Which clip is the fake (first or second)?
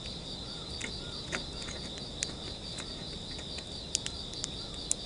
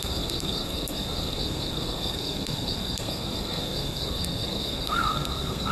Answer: second